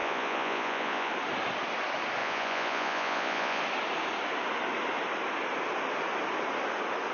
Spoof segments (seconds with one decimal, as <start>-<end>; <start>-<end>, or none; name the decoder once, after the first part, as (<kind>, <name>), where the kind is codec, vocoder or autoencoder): 0.0-1.1 (vocoder, Vocos); 2.2-3.6